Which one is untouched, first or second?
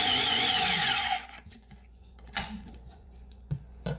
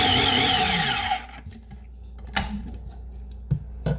second